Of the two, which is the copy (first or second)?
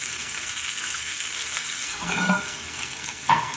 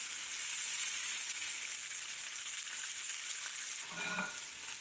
first